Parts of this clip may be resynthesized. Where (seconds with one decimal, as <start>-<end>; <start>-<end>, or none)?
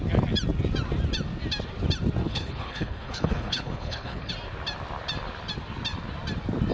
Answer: 2.2-4.3